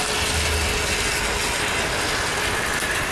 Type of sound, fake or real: real